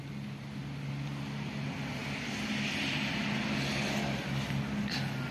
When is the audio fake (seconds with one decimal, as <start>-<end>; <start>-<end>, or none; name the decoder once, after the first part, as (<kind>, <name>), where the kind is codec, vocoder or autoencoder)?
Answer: none